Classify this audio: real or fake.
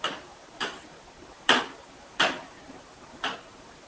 fake